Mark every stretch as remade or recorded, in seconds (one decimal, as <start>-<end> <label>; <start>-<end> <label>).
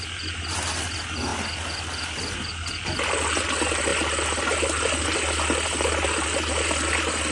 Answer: 0.0-7.3 recorded